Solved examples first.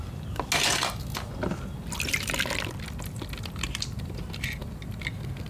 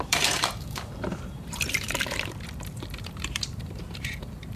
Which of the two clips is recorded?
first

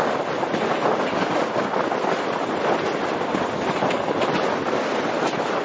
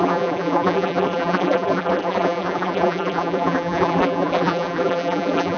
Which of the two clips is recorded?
first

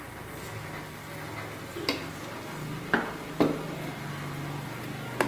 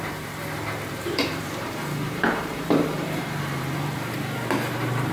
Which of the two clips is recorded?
first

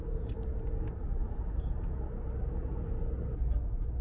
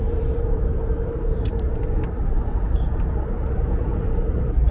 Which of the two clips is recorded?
first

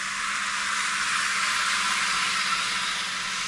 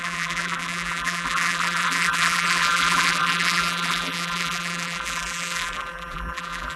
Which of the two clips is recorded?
first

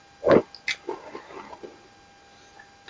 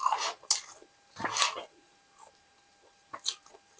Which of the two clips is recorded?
first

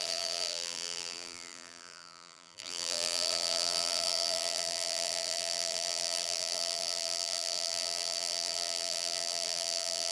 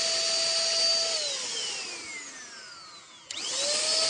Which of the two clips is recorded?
second